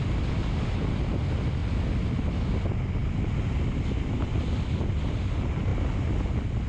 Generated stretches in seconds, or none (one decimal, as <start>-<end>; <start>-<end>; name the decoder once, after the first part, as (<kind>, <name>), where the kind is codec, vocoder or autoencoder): none